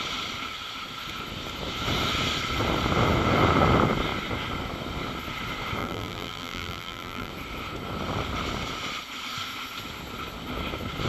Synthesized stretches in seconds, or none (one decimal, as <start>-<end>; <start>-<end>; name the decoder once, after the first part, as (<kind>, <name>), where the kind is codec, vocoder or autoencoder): 5.8-7.3 (vocoder, BigVGAN v2)